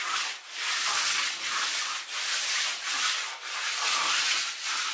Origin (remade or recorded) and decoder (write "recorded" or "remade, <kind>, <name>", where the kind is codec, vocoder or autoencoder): recorded